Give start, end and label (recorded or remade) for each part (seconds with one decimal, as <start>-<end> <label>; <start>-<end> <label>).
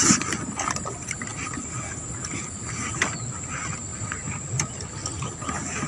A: 0.0-3.9 recorded; 3.9-5.2 remade; 5.2-5.9 recorded